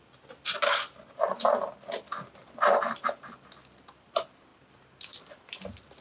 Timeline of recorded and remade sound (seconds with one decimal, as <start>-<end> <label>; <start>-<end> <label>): 0.0-6.0 recorded